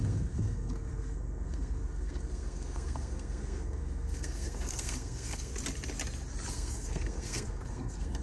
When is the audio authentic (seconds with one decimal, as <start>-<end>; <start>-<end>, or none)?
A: 5.5-6.5